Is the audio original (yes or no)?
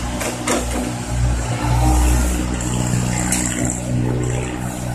yes